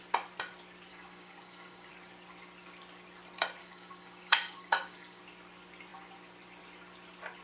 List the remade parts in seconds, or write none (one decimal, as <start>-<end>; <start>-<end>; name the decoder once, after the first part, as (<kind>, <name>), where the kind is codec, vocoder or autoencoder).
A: 0.9-1.9 (codec, DAC); 3.6-5.2